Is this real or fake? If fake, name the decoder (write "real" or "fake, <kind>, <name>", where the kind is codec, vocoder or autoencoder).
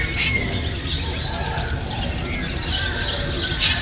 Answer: real